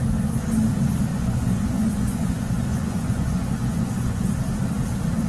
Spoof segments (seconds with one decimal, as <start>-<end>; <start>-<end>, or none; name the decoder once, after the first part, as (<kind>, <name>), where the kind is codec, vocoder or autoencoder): 1.1-4.3 (vocoder, Vocos)